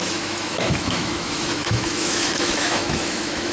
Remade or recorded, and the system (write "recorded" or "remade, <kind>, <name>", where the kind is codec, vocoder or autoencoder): remade, autoencoder, DAC-VAE